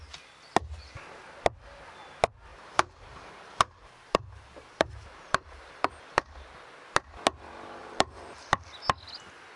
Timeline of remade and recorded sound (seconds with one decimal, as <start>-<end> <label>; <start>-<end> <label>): 0.0-2.5 recorded; 2.5-5.9 remade; 5.9-7.8 recorded; 7.8-8.7 remade; 8.7-9.6 recorded